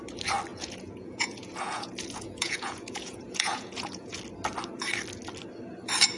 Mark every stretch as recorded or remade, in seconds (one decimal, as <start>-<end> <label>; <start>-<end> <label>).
0.0-0.5 recorded; 0.5-4.2 remade; 4.2-6.2 recorded